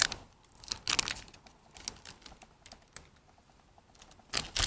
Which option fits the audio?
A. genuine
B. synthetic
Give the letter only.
A